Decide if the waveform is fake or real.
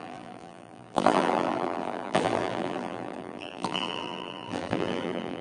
fake